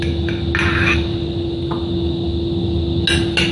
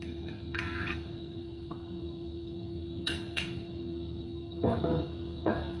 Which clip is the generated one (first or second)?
second